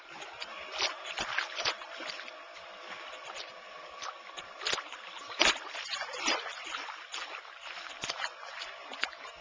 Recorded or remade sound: recorded